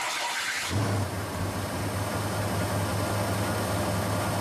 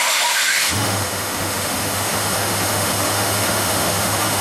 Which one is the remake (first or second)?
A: second